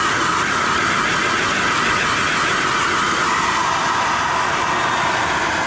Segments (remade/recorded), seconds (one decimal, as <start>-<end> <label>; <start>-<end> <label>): 0.0-5.7 recorded